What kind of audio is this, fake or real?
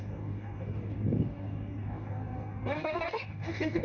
fake